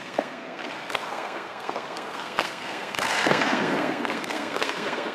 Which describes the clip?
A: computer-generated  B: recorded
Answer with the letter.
A